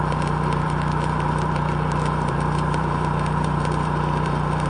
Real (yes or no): no